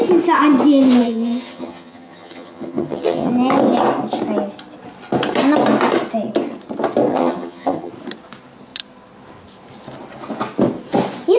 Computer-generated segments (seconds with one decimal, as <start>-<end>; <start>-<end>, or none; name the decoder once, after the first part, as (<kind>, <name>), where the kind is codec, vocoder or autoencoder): 1.0-3.3 (vocoder, HiFi-GAN); 7.1-7.9